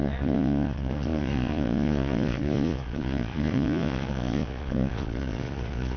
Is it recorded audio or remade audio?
remade